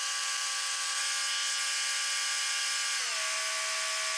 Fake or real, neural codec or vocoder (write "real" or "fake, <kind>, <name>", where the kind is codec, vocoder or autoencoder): real